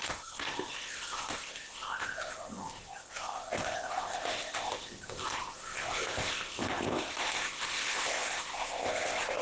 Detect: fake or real fake